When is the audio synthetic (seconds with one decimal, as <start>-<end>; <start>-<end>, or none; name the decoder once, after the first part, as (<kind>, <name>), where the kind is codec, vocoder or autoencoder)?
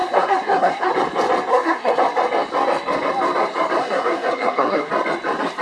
0.0-0.9 (codec, SNAC); 1.5-2.0; 3.8-4.9